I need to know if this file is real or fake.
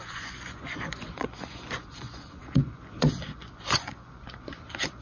fake